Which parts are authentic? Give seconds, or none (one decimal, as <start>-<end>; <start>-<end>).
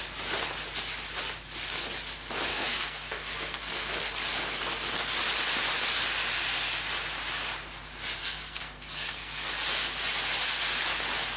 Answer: 0.0-2.5; 4.1-8.2; 9.5-11.4